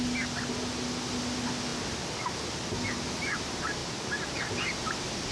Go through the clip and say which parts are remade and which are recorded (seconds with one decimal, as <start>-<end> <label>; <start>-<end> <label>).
0.0-5.3 recorded